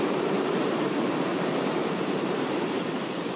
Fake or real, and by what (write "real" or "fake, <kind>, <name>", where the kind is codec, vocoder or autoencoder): fake, vocoder, BigVGAN v2